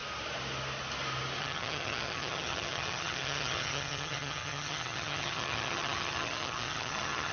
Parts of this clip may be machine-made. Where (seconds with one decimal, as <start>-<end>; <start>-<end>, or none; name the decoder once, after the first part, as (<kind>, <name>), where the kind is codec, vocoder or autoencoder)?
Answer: 1.4-7.3 (vocoder, HiFi-GAN)